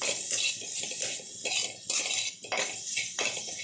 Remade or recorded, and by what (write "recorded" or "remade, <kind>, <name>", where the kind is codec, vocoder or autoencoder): recorded